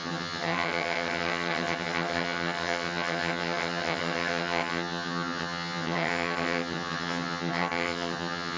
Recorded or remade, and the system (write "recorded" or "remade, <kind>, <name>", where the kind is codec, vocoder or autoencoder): remade, vocoder, HiFi-GAN